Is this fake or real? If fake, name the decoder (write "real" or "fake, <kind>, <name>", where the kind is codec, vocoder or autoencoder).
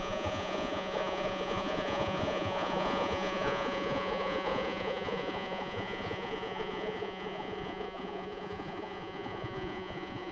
fake, vocoder, Vocos